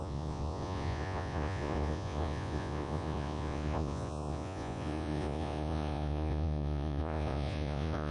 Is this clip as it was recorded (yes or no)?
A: no